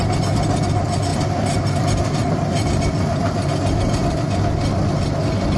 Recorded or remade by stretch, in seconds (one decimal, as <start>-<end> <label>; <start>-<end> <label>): 0.0-5.6 recorded